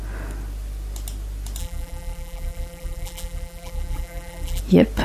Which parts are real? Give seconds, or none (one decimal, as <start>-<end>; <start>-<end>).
0.0-1.6; 4.6-5.0